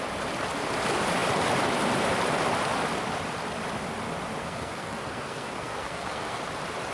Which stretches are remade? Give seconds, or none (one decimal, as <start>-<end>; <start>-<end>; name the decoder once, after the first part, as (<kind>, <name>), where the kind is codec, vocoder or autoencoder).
4.4-6.4 (codec, SNAC)